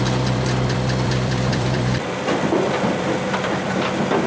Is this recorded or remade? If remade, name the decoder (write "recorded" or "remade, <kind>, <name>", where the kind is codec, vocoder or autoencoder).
remade, vocoder, BigVGAN v2